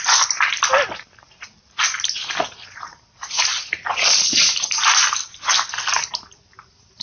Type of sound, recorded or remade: recorded